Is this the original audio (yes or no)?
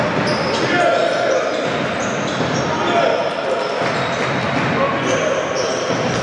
yes